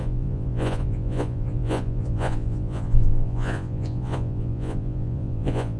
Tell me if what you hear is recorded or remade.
remade